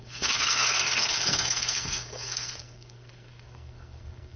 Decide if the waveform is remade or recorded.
remade